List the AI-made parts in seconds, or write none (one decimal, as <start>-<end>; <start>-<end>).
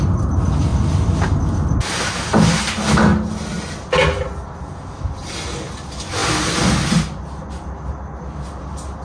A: none